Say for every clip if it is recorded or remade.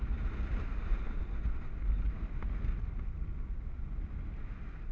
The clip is recorded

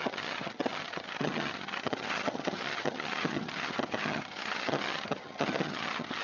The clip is remade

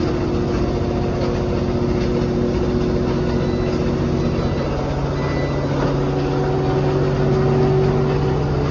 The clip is recorded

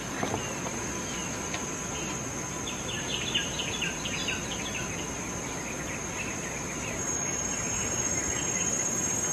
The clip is recorded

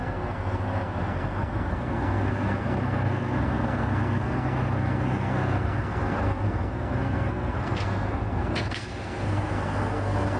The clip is remade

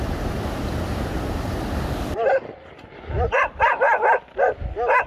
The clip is recorded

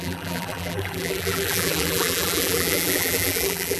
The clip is remade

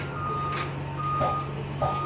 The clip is recorded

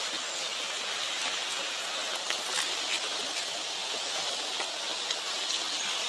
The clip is recorded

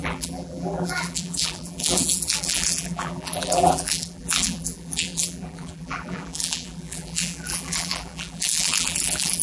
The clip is remade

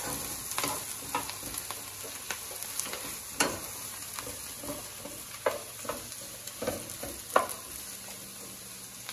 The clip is recorded